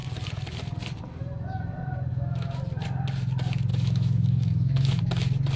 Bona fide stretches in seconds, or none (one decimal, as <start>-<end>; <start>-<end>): 0.0-2.1; 2.6-3.7; 5.0-5.6

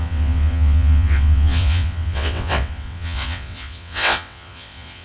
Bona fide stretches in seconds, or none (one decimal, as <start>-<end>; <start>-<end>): none

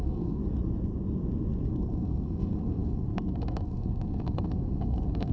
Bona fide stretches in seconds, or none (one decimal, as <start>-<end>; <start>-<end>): 0.4-1.7

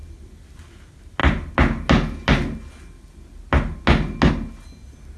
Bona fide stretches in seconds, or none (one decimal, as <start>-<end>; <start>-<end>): 0.0-5.2

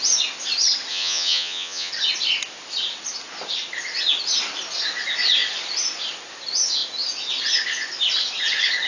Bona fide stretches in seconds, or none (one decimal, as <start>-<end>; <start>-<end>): 0.0-0.9; 1.9-8.9

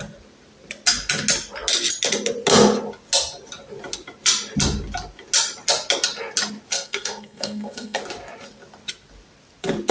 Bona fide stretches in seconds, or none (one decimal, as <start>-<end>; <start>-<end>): 0.0-6.7; 8.0-9.9

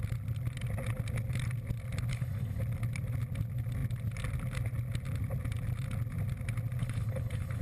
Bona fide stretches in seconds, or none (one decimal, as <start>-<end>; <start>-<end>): 0.0-2.1; 2.6-6.8